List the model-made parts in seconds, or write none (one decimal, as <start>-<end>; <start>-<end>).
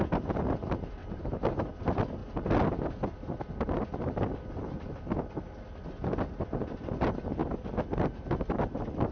1.0-1.7